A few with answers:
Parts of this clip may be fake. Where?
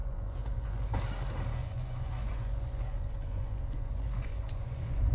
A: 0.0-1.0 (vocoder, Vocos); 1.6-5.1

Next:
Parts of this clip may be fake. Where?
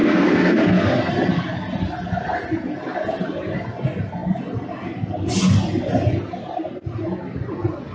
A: 0.0-1.1 (codec, SNAC)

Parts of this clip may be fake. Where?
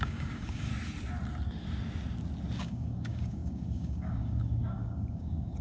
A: 0.0-0.7 (codec, DAC); 2.6-5.6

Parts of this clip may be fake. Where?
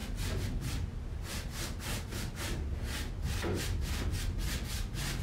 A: none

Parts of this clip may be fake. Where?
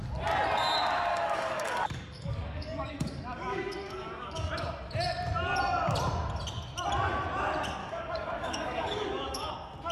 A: 1.1-4.5 (codec, DAC); 7.8-9.5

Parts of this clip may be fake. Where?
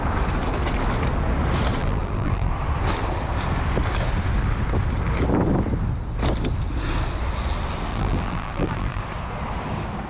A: 1.8-2.5 (vocoder, BigVGAN v2); 7.9-9.0